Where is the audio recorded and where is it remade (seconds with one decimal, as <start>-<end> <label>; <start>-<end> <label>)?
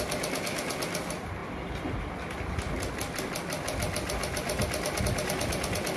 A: 0.0-6.0 recorded